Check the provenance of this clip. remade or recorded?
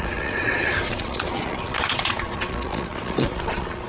remade